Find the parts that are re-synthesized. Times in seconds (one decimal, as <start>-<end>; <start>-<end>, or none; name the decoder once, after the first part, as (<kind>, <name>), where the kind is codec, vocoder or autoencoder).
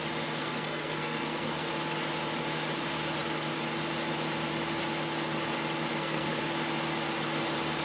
0.4-1.7 (codec, SNAC); 5.9-6.4